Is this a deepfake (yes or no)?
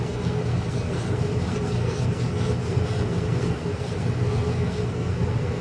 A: yes